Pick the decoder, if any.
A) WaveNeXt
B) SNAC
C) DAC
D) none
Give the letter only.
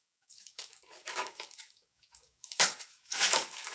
C